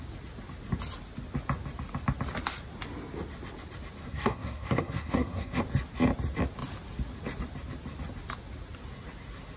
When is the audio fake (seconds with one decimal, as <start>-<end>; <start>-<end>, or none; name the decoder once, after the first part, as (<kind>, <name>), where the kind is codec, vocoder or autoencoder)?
4.0-5.6 (codec, SNAC)